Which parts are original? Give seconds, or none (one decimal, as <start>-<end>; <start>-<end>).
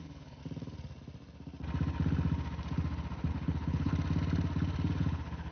0.4-3.3; 3.9-5.0